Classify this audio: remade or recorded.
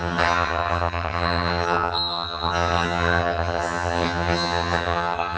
remade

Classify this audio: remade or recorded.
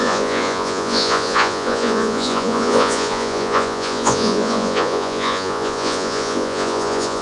remade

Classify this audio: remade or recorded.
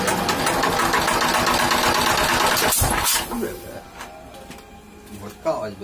recorded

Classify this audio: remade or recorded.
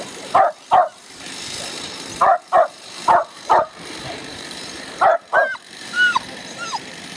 remade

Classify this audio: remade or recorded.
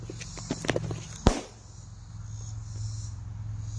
recorded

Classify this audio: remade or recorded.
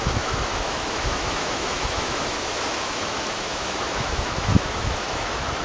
remade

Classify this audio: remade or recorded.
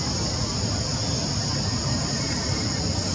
recorded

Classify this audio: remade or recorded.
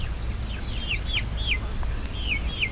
recorded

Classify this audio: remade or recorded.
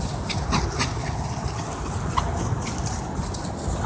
recorded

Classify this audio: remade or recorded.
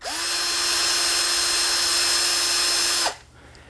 recorded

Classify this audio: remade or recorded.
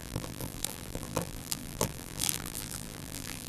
remade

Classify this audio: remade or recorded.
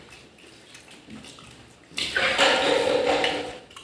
recorded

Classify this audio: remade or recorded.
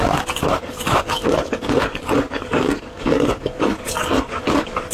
remade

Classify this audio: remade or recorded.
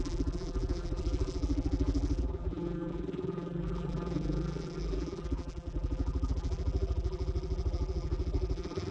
remade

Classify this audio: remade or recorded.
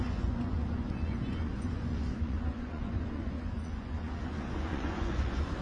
remade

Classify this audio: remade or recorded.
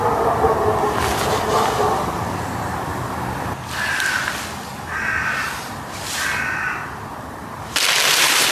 recorded